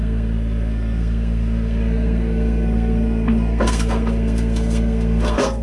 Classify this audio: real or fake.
fake